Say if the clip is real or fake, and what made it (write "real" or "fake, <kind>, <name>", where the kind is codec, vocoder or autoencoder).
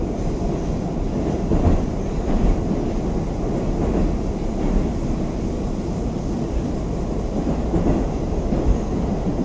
real